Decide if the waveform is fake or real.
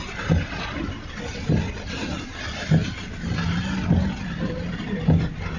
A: real